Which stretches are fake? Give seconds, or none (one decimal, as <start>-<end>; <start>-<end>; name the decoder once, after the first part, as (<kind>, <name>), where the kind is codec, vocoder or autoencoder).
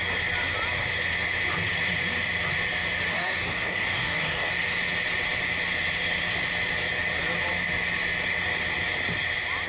3.1-4.5 (codec, DAC)